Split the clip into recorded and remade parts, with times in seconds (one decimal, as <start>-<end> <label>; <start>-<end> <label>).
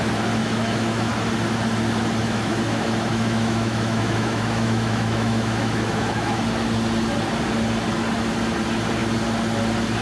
0.0-0.4 recorded; 0.4-1.1 remade; 1.1-2.2 recorded; 2.2-6.4 remade; 6.4-10.0 recorded